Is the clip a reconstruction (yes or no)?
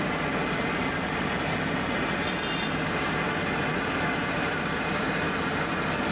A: no